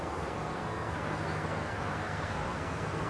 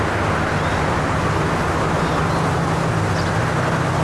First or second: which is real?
second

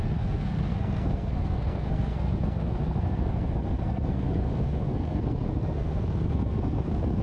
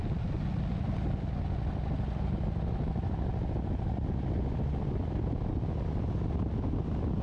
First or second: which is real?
second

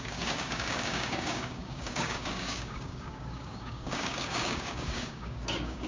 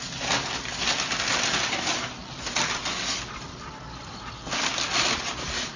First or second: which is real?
second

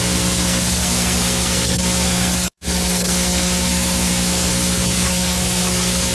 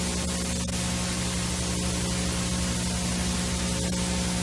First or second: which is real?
second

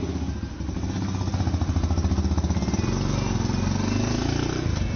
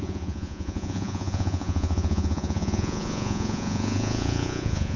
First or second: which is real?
first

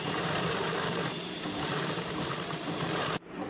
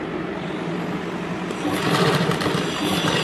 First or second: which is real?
second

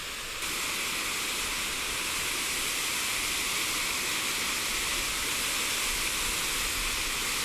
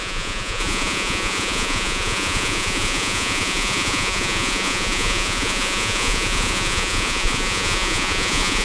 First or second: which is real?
first